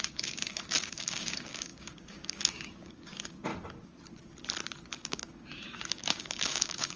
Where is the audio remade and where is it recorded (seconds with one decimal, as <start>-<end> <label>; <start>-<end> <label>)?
0.0-3.5 remade; 3.5-5.1 recorded; 5.1-7.0 remade